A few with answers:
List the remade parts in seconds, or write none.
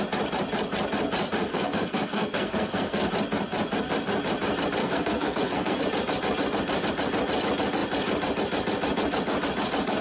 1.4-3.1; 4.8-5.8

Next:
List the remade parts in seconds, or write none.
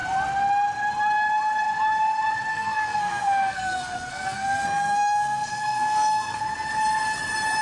2.5-6.4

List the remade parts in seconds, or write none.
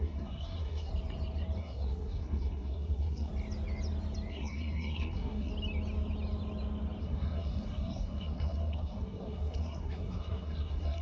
0.0-0.9; 1.6-3.3; 4.3-5.5; 7.0-11.0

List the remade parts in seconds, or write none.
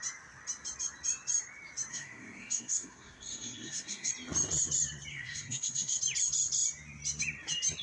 1.9-4.1; 5.1-6.0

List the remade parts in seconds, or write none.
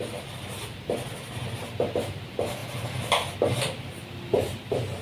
none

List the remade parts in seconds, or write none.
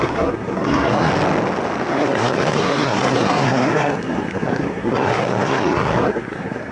0.0-1.1; 1.9-6.7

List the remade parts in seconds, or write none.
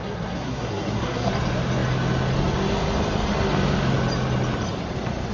0.0-1.3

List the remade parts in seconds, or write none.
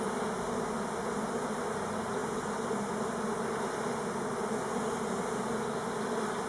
none